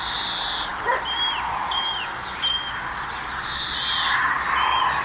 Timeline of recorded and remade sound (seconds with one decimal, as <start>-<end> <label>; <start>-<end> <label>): 0.0-5.0 recorded